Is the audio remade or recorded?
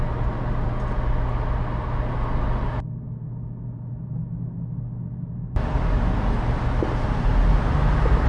recorded